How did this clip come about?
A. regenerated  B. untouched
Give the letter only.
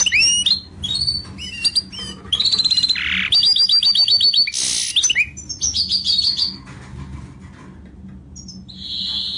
B